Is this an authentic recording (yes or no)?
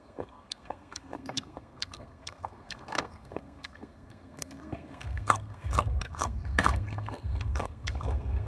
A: no